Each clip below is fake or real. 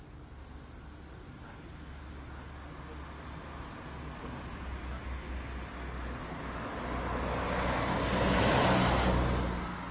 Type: real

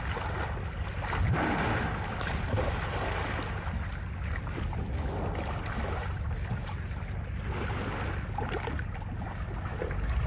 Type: real